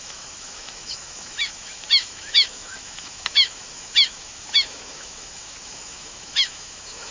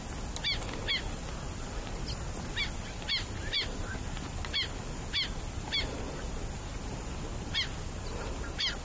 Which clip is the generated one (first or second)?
first